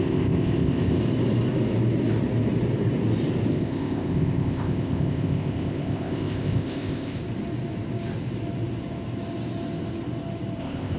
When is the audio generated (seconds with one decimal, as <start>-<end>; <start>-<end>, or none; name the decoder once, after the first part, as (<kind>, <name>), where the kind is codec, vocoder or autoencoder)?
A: 0.0-1.0 (codec, ZipCodec); 3.5-7.2; 10.6-11.0